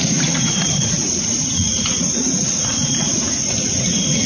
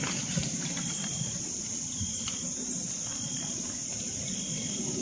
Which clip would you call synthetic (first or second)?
first